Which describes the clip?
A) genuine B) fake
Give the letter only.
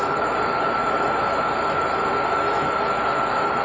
B